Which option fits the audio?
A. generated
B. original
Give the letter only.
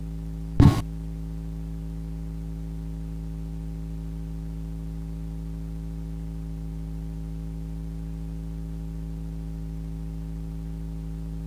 B